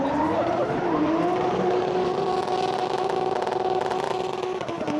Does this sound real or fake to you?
real